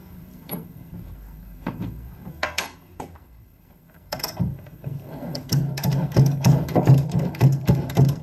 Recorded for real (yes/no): no